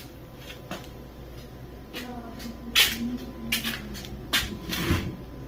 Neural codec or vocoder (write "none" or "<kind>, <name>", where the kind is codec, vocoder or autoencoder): none